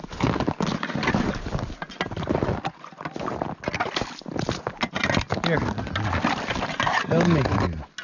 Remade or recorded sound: recorded